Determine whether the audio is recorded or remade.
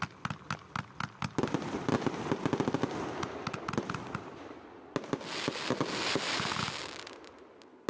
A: recorded